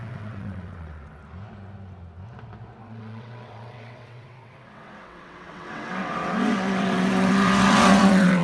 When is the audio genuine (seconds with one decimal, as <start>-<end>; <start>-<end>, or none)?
1.2-2.8